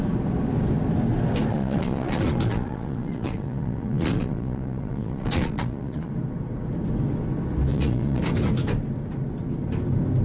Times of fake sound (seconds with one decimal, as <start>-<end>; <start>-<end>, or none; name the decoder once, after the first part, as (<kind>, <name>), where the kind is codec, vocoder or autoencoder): 1.5-6.1 (vocoder, Vocos); 7.7-8.2